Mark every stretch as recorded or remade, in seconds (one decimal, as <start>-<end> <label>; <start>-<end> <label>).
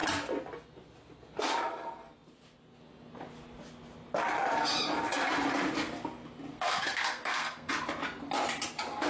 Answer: 0.0-6.5 recorded; 6.5-7.7 remade; 7.7-9.1 recorded